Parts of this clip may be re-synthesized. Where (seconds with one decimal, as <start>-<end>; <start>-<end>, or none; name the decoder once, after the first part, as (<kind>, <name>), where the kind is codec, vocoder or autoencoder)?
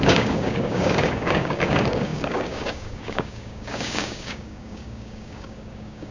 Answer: 0.0-6.1 (codec, DAC)